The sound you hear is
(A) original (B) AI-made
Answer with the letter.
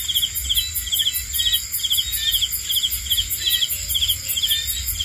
A